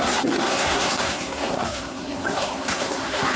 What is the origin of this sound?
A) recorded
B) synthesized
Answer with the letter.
B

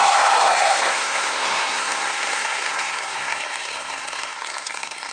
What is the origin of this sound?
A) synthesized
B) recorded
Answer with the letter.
A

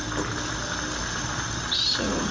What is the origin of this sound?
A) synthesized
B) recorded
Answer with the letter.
B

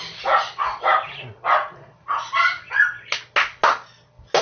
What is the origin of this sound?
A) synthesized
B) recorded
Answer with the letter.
B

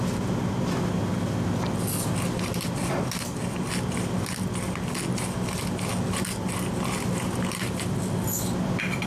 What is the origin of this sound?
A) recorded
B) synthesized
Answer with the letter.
A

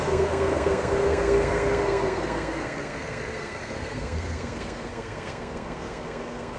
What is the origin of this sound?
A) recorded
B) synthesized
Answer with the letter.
B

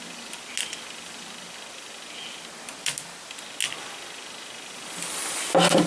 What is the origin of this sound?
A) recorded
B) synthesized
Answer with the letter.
A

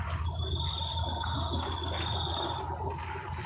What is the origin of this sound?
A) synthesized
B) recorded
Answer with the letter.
B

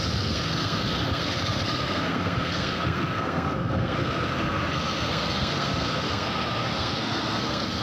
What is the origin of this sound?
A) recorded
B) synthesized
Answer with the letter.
B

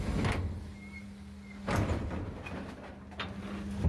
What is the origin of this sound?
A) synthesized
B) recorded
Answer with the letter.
B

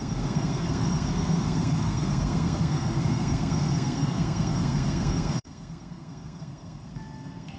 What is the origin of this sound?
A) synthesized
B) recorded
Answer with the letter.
A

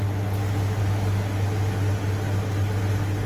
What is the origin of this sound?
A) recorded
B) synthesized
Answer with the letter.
A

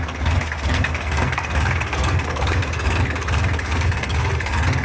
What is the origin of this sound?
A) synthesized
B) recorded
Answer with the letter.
A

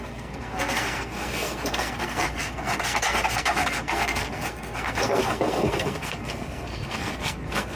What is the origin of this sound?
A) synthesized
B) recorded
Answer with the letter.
A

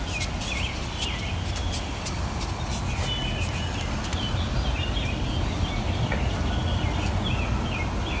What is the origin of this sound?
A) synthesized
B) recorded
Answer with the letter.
B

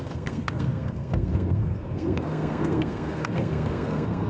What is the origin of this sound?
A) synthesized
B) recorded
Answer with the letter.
A